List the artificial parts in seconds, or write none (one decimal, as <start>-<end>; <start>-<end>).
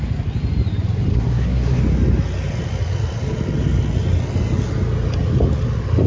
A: 1.1-1.8